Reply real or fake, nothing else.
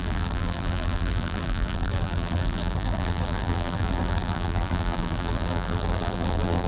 fake